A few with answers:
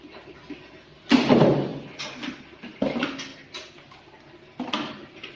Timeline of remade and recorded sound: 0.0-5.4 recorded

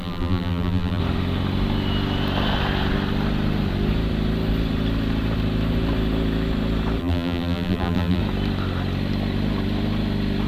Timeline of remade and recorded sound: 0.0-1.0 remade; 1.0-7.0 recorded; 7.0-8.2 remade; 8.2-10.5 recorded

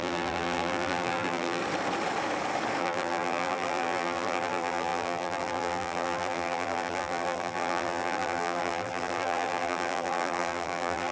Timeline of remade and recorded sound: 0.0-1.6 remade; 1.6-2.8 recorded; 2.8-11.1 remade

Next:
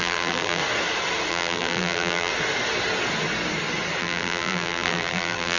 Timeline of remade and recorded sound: 0.0-0.6 remade; 0.6-1.3 recorded; 1.3-2.3 remade; 2.3-4.0 recorded; 4.0-5.6 remade

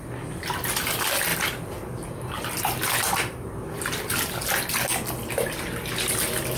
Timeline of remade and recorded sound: 0.0-6.6 recorded

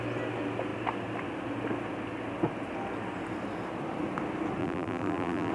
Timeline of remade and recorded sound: 0.0-4.6 recorded; 4.6-5.5 remade

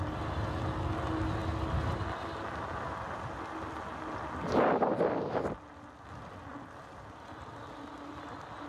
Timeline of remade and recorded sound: 0.0-8.7 recorded

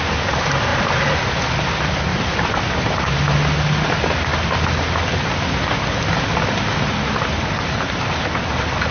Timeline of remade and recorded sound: 0.0-2.1 recorded; 2.1-3.0 remade; 3.0-8.9 recorded